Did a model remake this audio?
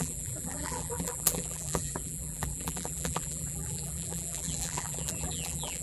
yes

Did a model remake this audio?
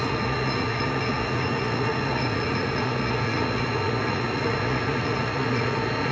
yes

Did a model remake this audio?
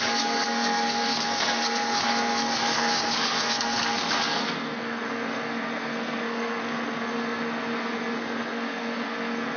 yes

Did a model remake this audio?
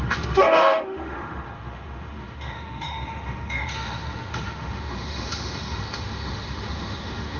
yes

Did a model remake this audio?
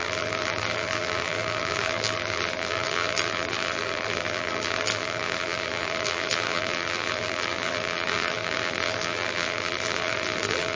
yes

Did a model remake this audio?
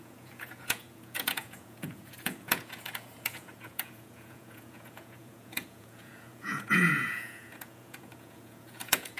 yes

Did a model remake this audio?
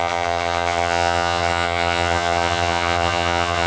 yes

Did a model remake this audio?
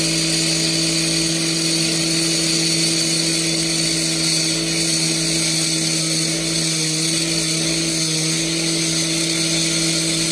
no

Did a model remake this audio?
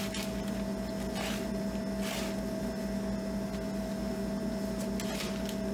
no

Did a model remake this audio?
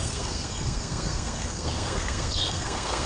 yes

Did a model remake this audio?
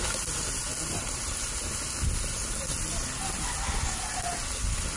no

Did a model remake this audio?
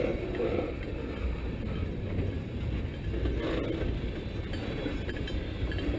no